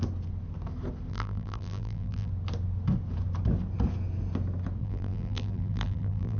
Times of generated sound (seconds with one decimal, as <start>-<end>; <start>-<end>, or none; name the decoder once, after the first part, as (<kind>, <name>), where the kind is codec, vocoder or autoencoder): 1.1-2.3 (vocoder, BigVGAN v2); 4.8-6.4